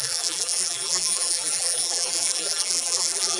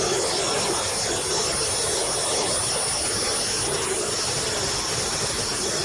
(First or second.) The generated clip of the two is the first